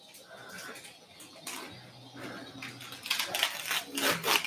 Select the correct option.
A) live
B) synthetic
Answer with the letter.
A